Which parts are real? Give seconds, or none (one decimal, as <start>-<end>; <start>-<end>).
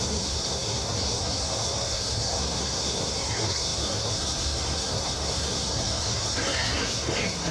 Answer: none